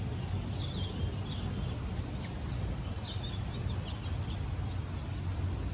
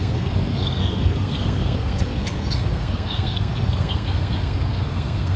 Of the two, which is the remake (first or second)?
second